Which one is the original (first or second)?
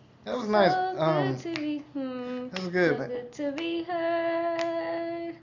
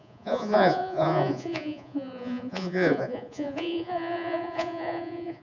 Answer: first